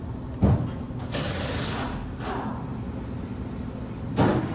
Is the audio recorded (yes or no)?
yes